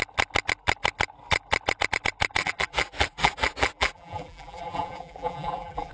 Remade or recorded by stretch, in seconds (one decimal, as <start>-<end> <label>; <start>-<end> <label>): 0.0-2.4 recorded; 2.4-5.9 remade